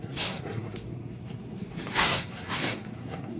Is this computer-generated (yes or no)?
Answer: yes